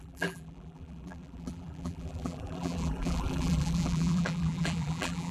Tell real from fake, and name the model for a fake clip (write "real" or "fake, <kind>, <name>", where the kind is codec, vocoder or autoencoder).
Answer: fake, vocoder, BigVGAN v2